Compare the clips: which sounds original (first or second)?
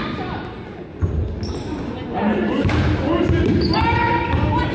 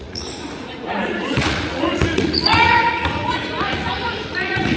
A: first